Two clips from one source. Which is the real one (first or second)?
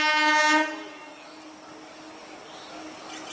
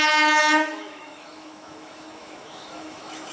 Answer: first